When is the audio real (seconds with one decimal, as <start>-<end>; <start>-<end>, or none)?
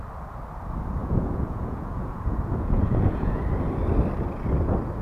0.0-1.0; 3.4-5.0